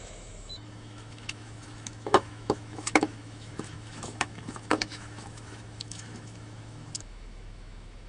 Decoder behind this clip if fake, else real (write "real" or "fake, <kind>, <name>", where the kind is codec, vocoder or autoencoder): fake, autoencoder, DAC-VAE